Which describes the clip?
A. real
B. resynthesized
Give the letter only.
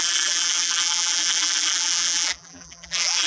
B